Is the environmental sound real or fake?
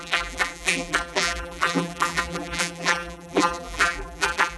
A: fake